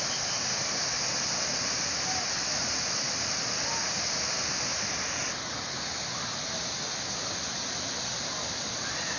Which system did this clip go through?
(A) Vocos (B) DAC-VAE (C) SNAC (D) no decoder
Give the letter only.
D